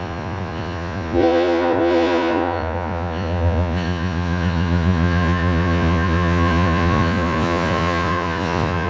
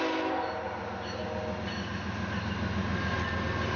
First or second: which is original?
second